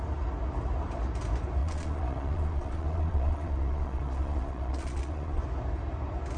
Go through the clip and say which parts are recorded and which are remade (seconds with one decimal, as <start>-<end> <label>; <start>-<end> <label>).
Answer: 0.0-1.6 recorded; 1.6-5.4 remade; 5.4-6.4 recorded